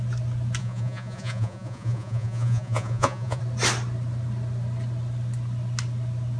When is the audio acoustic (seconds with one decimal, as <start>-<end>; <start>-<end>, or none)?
0.0-0.6; 3.4-6.4